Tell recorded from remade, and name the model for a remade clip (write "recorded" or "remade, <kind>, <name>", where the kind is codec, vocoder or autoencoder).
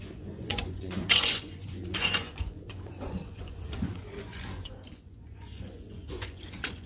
remade, vocoder, Vocos